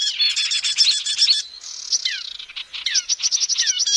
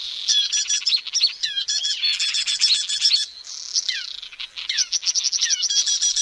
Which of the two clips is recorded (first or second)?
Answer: first